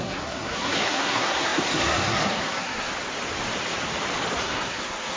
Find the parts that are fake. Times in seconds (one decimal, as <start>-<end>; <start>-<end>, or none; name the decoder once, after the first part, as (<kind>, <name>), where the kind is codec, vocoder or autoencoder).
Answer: 0.0-2.9 (codec, SNAC); 4.4-5.2